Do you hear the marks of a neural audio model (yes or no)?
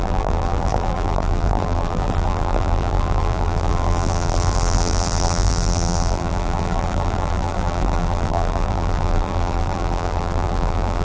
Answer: yes